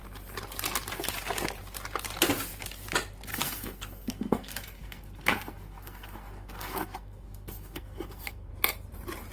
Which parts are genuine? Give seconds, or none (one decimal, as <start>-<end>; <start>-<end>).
0.0-3.3; 8.5-9.3